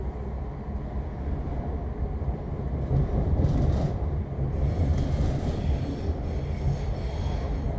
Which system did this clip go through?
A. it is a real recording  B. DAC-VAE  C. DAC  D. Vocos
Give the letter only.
A